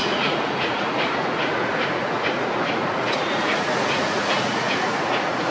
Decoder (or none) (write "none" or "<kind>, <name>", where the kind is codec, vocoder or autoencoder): vocoder, Vocos